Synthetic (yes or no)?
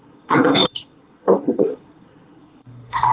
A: yes